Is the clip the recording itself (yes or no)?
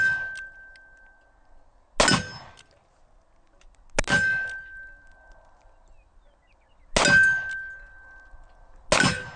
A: yes